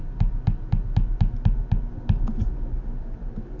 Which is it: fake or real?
real